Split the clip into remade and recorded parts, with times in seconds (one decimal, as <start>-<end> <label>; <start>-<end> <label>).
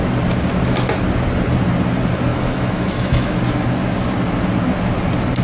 0.0-2.3 recorded; 2.3-3.4 remade; 3.4-5.4 recorded